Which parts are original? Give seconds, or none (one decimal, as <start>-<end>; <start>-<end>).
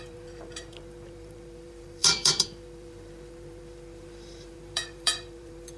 none